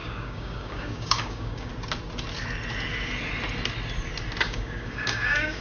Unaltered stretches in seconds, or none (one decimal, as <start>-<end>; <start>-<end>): 1.7-4.4